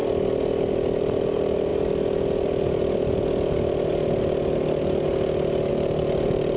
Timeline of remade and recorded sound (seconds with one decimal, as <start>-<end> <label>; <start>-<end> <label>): 0.0-0.7 recorded; 0.7-1.7 remade; 1.7-5.7 recorded; 5.7-6.6 remade